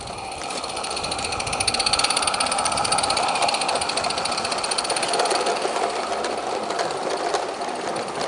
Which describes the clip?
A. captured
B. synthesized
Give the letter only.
A